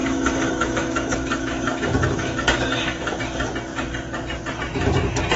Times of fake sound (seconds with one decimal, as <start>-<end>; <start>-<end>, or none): 0.0-3.2